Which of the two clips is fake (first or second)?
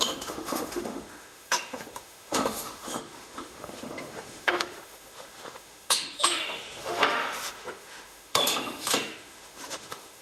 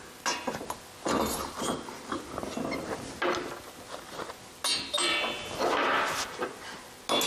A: first